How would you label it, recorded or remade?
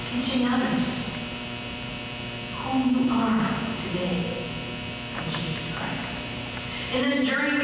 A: remade